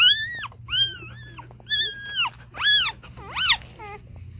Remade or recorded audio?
recorded